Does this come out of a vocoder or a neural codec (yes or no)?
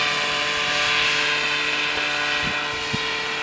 no